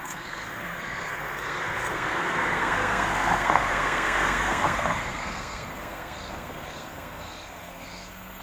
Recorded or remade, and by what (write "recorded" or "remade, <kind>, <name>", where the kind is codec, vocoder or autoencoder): remade, codec, SNAC